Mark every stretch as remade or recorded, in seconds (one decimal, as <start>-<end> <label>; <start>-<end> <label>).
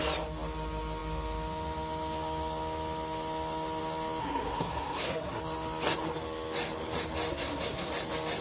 0.0-4.2 recorded; 4.2-5.4 remade; 5.4-7.3 recorded; 7.3-7.9 remade; 7.9-8.4 recorded